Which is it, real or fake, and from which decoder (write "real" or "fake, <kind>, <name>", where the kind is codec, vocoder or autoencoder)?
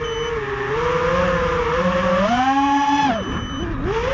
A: real